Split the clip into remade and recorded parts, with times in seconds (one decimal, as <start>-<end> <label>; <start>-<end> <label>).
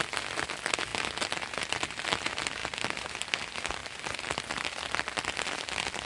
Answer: 0.0-2.6 recorded; 2.6-3.4 remade; 3.4-3.8 recorded; 3.8-4.9 remade; 4.9-6.1 recorded